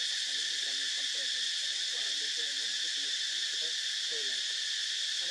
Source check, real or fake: real